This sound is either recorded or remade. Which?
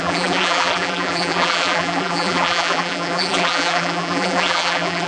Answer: remade